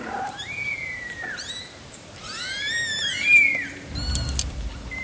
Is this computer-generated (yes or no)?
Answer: yes